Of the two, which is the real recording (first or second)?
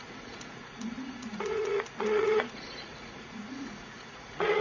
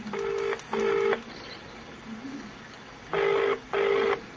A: second